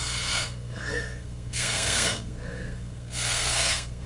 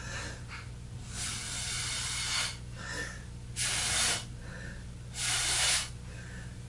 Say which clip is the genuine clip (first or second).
second